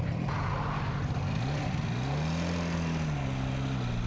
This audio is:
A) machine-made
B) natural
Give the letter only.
B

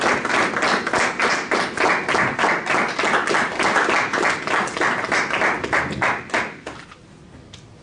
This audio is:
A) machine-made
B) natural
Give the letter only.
B